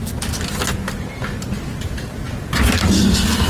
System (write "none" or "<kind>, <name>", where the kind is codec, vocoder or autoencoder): none